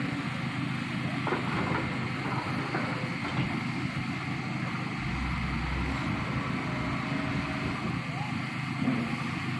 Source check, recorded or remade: recorded